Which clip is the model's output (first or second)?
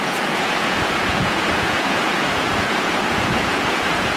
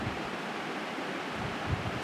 first